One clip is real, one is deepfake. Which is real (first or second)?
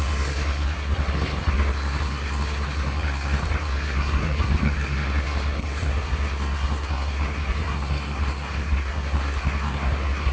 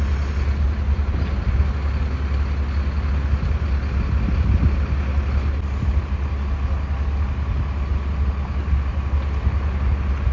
second